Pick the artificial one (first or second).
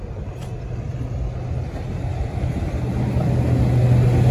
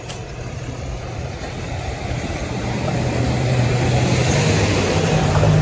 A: second